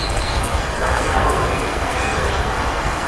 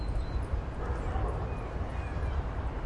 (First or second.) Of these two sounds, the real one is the second